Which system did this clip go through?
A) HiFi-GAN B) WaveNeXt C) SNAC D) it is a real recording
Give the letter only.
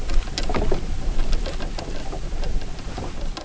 D